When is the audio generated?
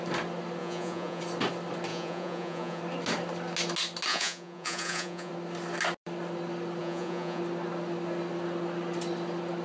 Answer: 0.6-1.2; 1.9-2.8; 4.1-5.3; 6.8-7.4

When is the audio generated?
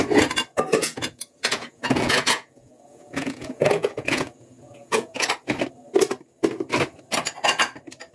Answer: 0.8-5.2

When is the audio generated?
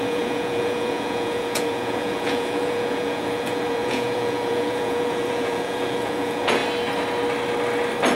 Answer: 0.0-6.6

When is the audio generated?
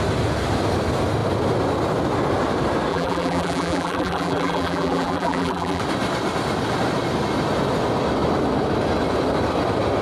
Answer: 2.9-5.8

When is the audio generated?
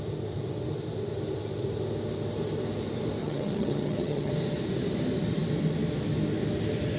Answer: 3.2-4.3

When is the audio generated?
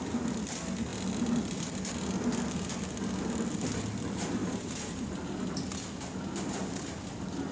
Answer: 4.4-5.3